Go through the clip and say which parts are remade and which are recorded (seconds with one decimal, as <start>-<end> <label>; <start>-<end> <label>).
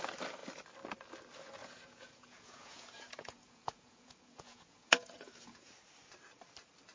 0.0-1.6 recorded; 1.6-5.7 remade; 5.7-6.9 recorded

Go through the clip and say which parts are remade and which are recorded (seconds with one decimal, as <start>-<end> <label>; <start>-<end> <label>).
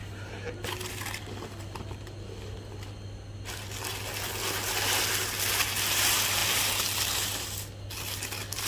0.0-8.7 recorded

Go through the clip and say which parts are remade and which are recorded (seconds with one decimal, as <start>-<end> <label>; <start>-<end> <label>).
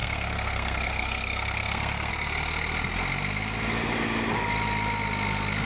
0.0-2.1 remade; 2.1-5.7 recorded